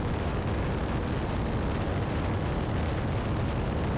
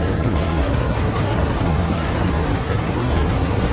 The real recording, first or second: first